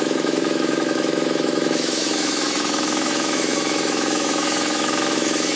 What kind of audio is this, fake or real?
fake